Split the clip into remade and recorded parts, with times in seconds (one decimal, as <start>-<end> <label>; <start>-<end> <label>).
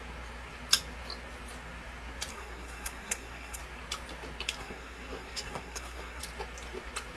0.0-2.3 recorded; 2.3-3.6 remade; 3.6-4.6 recorded; 4.6-6.2 remade; 6.2-7.2 recorded